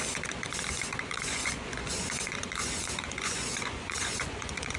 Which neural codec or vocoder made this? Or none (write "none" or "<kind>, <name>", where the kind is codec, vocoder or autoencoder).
vocoder, Vocos